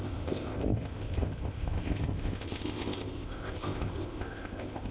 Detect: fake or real fake